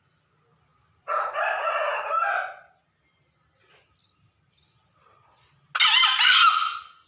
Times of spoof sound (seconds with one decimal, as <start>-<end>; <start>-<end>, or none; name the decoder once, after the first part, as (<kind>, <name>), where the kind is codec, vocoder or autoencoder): none